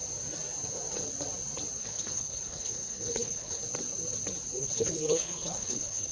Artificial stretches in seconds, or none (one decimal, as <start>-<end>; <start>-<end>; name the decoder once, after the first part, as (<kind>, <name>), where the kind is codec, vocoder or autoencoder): 1.8-3.6 (codec, HILCodec); 4.6-6.1